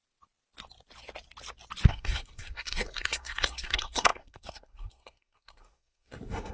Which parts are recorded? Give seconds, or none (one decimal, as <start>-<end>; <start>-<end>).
0.0-1.9